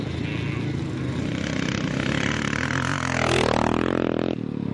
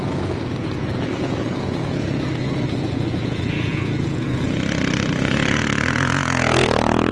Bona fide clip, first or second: first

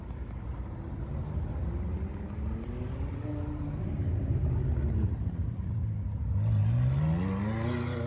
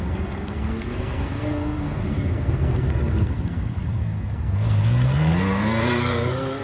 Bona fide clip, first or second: first